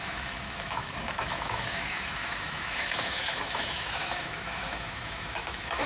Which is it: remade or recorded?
remade